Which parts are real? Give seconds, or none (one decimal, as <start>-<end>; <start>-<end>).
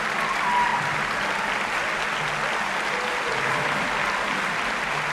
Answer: 0.0-5.1